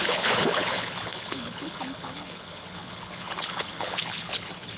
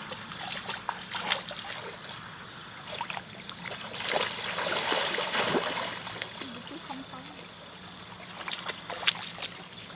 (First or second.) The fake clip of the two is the first